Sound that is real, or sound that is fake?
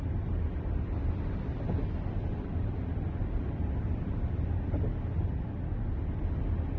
real